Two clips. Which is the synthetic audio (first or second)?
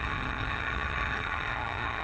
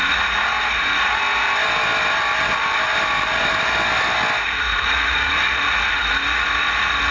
first